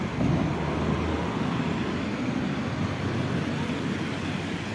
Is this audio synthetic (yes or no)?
no